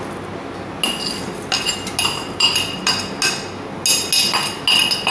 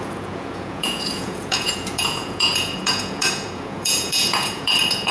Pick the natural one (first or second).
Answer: first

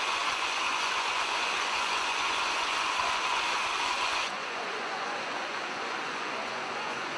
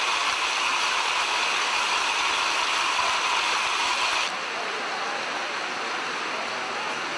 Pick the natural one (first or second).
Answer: second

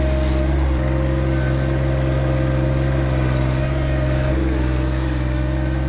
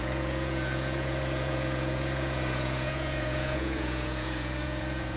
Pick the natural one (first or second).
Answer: first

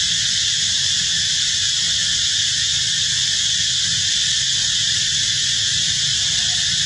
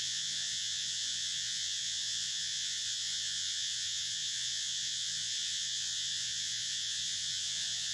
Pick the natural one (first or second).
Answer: first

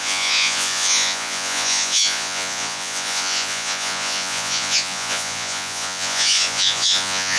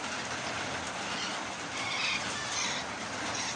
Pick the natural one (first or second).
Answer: second